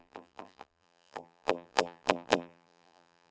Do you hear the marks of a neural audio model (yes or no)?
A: yes